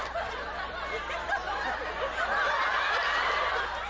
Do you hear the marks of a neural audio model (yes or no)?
no